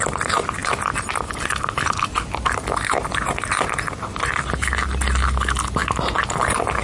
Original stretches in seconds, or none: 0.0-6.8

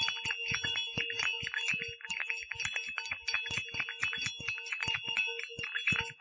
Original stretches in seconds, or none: 0.0-6.2

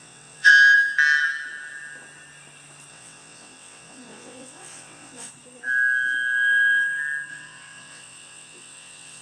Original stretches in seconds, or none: 0.5-2.9; 5.3-7.3

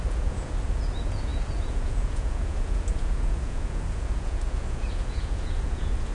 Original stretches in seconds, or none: none

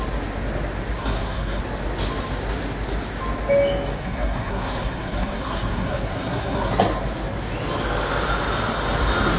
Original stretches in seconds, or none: 0.0-1.0; 1.6-4.0; 6.7-9.4

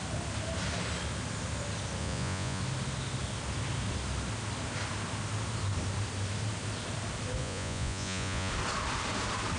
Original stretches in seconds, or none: 0.0-2.0; 2.6-7.4; 8.5-9.6